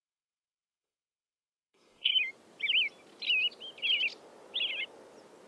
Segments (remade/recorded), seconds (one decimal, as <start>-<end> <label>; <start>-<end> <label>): 0.0-2.1 remade; 2.1-5.5 recorded